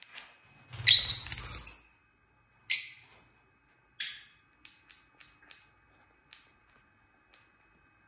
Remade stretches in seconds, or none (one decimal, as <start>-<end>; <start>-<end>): none